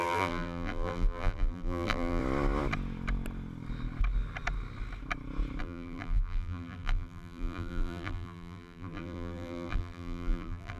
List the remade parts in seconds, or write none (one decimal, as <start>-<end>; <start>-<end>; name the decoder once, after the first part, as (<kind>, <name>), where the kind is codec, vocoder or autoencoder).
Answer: 0.0-2.2 (vocoder, BigVGAN v2); 5.6-10.8